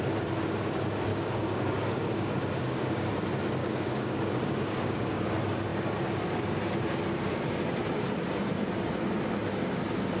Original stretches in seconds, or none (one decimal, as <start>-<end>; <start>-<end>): 0.0-1.1; 3.1-3.6; 5.3-10.2

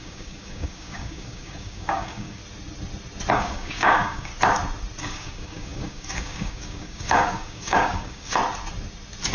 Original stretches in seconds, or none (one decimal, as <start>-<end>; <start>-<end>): 2.4-3.3; 4.3-5.0; 8.4-9.3